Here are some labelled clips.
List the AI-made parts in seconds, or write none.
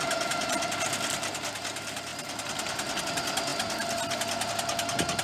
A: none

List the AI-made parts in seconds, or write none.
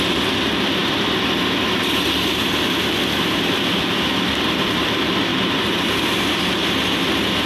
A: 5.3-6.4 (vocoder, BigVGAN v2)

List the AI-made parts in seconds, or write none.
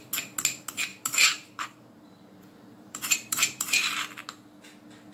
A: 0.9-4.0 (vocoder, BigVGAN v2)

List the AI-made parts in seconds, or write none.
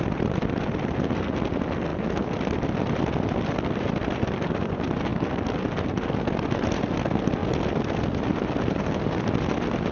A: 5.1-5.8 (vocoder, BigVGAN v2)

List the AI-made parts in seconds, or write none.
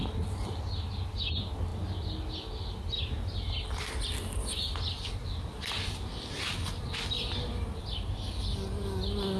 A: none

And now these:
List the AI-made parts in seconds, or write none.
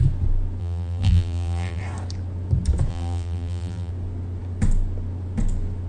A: 0.6-1.8 (vocoder, BigVGAN v2); 2.9-3.9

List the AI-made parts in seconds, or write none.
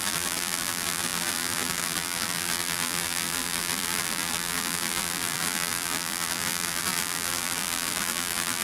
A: 0.0-8.6 (vocoder, BigVGAN v2)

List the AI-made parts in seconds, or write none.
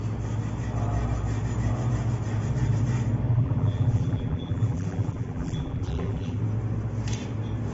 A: 3.3-6.4 (vocoder, BigVGAN v2)